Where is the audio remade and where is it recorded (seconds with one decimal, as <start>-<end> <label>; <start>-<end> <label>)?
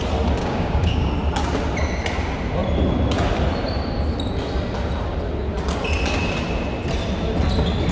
0.0-0.4 recorded; 0.4-1.1 remade; 1.1-7.9 recorded